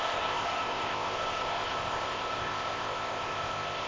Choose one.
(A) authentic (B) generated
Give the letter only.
B